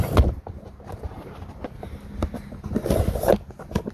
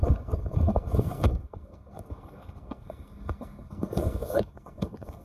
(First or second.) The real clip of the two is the first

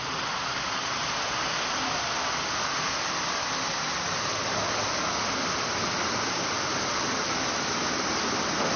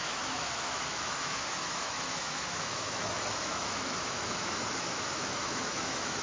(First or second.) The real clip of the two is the first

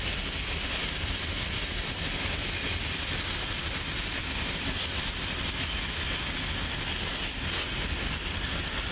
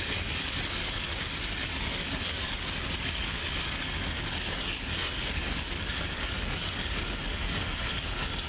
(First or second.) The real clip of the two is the first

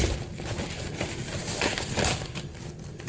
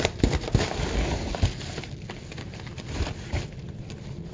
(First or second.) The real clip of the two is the first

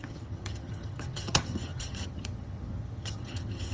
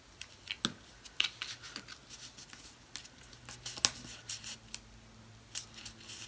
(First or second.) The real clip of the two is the second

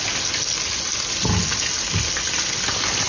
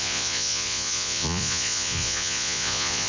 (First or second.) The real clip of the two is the first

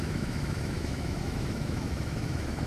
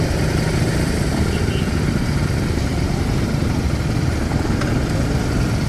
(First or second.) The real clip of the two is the second